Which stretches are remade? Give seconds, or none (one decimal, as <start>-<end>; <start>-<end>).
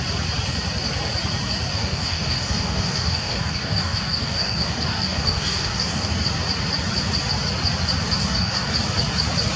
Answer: 1.7-6.1; 8.2-8.7